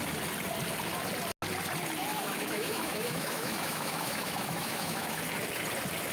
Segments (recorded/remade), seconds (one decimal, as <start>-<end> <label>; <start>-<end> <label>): 0.0-2.1 recorded; 2.1-5.2 remade; 5.2-6.1 recorded